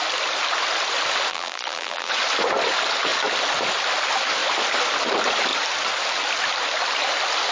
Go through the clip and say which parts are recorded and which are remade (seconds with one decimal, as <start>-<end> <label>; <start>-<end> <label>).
0.0-1.3 recorded; 1.3-2.1 remade; 2.1-7.5 recorded